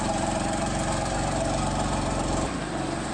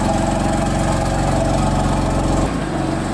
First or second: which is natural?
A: second